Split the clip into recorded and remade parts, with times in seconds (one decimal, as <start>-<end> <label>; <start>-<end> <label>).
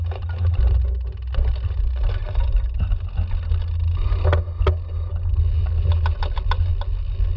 0.0-7.4 recorded